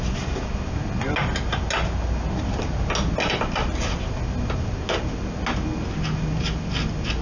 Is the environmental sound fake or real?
real